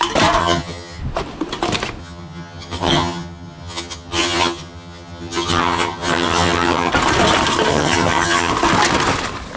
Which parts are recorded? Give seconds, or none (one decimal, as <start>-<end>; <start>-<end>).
0.0-0.4; 1.0-2.0; 6.9-7.7; 8.5-9.6